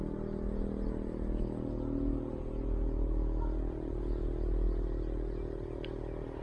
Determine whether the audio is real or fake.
real